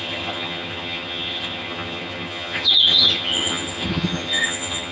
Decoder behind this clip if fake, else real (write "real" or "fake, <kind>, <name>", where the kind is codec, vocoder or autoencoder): fake, vocoder, HiFi-GAN